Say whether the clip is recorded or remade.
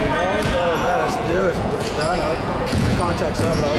remade